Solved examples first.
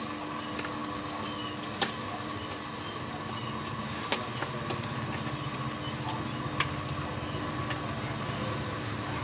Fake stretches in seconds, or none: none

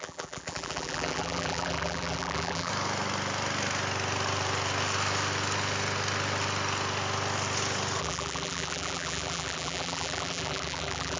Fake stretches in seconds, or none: 0.0-2.7 (vocoder, BigVGAN v2); 8.0-11.2

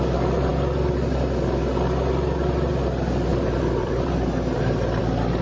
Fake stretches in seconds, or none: 3.3-5.0 (vocoder, BigVGAN v2)

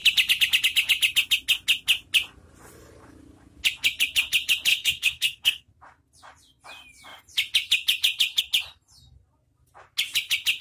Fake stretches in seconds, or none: 4.7-5.7 (codec, SNAC)

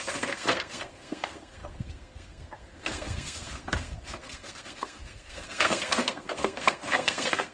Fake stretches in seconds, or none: 0.0-7.5 (codec, SNAC)